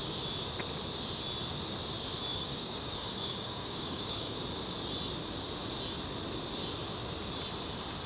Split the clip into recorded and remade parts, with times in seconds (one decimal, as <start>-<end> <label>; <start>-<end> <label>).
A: 0.0-2.3 recorded; 2.3-4.3 remade; 4.3-8.1 recorded